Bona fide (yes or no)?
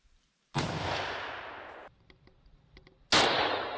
yes